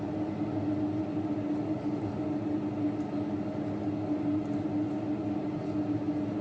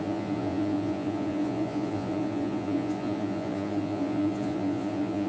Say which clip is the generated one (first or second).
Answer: second